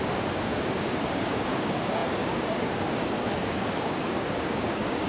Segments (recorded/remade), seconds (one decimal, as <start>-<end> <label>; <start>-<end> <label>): 0.0-5.1 remade